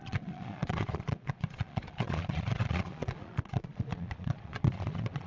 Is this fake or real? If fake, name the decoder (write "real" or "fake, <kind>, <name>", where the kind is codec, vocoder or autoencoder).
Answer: fake, vocoder, Vocos